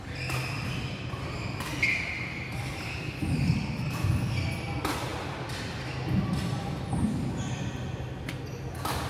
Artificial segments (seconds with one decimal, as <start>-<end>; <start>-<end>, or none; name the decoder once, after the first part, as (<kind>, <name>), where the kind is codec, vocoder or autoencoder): none